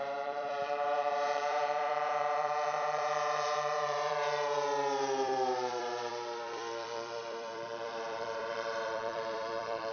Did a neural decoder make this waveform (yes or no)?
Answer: yes